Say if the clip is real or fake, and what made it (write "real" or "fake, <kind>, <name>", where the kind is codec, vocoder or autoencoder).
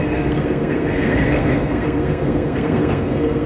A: fake, codec, SNAC